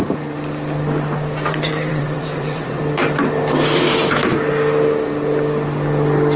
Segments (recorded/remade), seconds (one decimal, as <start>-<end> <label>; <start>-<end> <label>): 0.0-1.5 recorded; 1.5-2.8 remade; 2.8-6.4 recorded